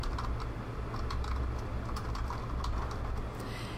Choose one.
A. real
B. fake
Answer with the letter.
A